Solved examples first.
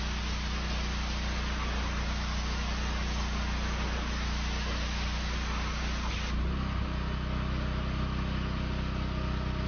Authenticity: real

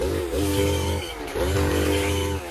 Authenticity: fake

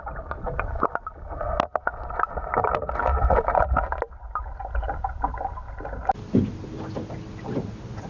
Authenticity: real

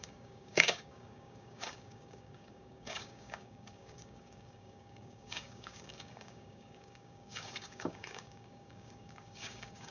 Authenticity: fake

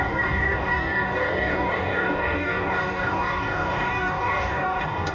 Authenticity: fake